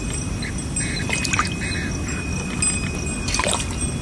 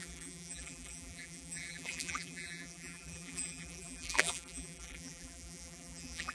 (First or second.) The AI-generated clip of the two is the second